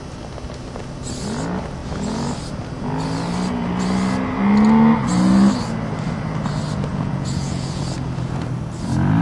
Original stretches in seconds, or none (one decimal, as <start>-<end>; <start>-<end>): 0.0-6.9; 7.8-9.2